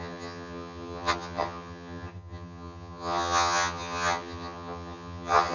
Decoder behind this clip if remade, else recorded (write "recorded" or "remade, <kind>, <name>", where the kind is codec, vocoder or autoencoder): remade, vocoder, HiFi-GAN